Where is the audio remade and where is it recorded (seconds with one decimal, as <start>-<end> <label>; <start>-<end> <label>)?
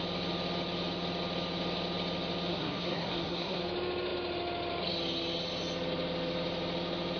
0.0-2.5 recorded; 2.5-3.6 remade; 3.6-7.2 recorded